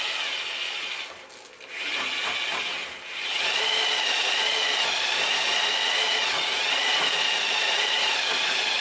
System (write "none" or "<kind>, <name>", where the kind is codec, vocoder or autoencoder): none